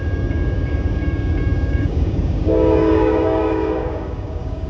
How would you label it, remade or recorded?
remade